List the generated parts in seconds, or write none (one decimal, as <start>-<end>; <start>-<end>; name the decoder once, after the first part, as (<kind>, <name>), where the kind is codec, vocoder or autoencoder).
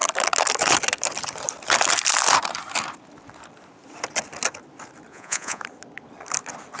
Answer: 5.1-5.6 (vocoder, Vocos)